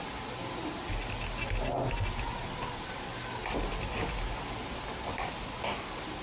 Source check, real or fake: real